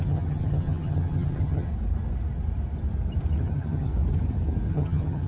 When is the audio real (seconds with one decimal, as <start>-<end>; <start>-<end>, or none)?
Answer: 1.7-3.4; 3.9-4.7